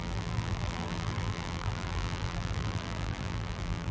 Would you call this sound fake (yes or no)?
yes